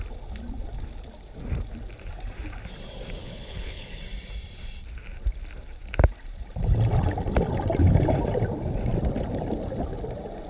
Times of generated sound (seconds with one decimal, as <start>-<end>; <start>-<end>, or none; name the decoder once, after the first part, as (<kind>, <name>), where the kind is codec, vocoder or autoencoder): 3.2-4.0 (codec, HILCodec)